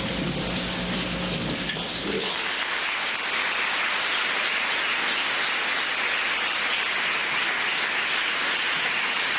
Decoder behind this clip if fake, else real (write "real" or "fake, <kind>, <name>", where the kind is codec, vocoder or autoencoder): real